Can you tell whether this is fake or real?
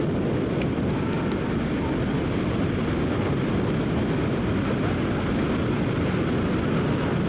real